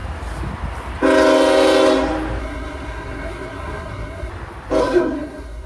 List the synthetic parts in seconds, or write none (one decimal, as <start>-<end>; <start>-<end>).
2.4-4.3; 4.8-5.7